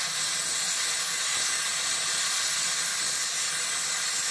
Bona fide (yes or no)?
yes